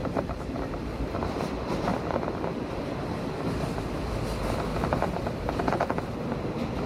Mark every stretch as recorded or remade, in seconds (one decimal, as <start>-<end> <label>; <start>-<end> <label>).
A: 0.0-1.5 remade; 1.5-4.7 recorded; 4.7-5.7 remade; 5.7-6.9 recorded